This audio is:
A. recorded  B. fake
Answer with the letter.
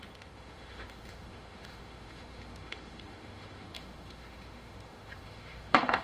B